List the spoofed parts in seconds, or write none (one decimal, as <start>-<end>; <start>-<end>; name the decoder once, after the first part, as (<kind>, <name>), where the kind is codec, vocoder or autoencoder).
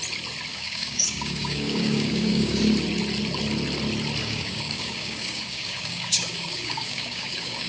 0.5-2.6 (codec, DAC); 4.2-7.7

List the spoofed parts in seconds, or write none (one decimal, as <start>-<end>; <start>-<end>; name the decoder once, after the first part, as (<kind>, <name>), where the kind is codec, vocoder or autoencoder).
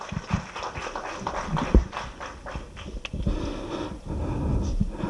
none